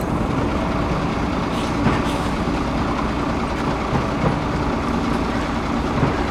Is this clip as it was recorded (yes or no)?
yes